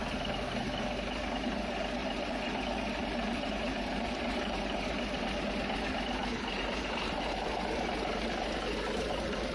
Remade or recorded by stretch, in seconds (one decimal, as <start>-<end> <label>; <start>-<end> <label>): 0.0-2.0 recorded; 2.0-5.5 remade; 5.5-6.2 recorded; 6.2-7.5 remade; 7.5-9.5 recorded